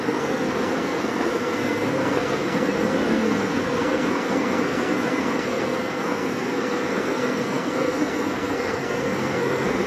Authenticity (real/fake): fake